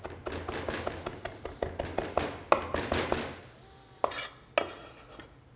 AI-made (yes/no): no